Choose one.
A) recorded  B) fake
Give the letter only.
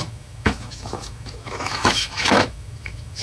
B